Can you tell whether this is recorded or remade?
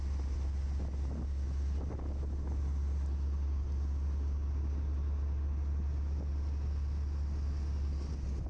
recorded